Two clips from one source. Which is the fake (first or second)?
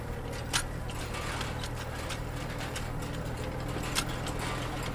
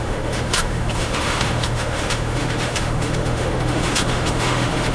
second